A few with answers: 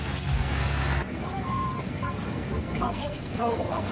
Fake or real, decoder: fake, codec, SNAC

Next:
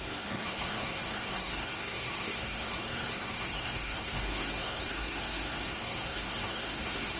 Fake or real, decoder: fake, codec, SNAC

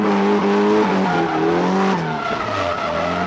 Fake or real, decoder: real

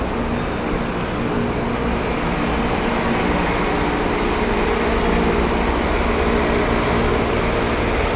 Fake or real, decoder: real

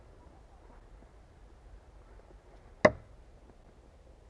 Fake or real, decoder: real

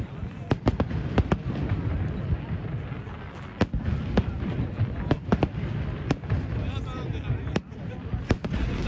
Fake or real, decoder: real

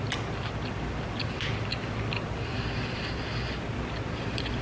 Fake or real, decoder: real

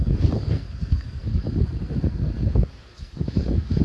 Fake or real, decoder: fake, codec, SNAC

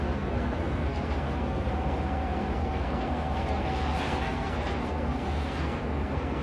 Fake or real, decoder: fake, codec, SNAC